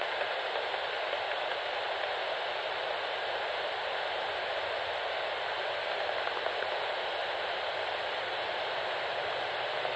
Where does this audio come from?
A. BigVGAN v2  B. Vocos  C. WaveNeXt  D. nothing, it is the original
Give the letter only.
D